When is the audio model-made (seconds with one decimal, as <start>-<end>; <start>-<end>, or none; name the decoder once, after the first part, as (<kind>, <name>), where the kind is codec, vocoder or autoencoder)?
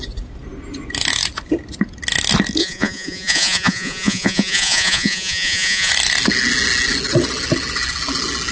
2.6-5.9 (vocoder, Vocos)